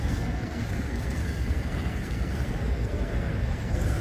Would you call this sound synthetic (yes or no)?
yes